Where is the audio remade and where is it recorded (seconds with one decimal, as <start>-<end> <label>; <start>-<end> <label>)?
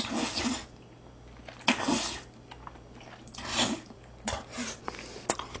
0.0-3.5 recorded; 3.5-4.8 remade; 4.8-5.6 recorded